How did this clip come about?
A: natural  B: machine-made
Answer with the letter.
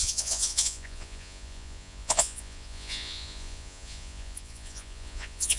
B